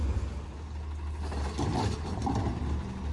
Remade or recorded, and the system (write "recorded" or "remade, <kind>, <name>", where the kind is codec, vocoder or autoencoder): recorded